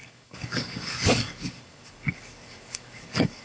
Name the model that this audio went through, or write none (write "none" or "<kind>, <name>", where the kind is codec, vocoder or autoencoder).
codec, DAC